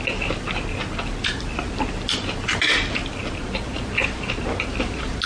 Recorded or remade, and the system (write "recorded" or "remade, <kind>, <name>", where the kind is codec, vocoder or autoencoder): recorded